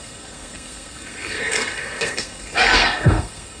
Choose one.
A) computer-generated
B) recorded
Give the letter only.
A